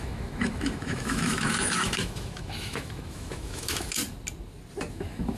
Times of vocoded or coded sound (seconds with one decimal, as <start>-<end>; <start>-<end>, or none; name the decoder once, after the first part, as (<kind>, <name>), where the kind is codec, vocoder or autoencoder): 0.0-4.0 (autoencoder, DAC-VAE); 4.9-5.4